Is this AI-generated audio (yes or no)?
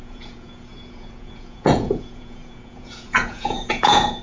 yes